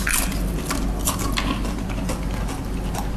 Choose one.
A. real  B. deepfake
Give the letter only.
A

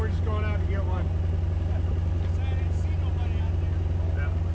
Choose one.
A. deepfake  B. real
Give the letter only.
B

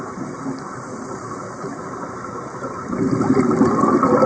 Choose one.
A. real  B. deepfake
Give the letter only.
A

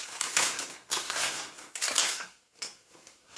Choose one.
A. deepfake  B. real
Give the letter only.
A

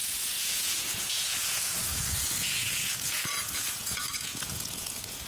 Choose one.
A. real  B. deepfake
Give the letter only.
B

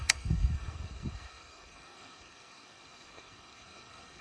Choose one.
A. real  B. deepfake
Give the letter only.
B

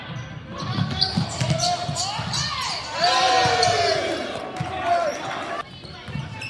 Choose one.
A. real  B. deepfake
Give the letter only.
A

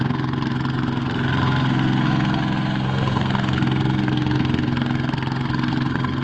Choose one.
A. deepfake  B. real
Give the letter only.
A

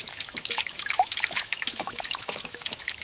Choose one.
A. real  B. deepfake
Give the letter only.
B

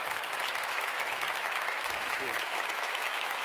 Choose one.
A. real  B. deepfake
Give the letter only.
B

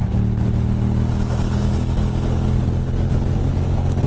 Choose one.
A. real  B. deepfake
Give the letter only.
A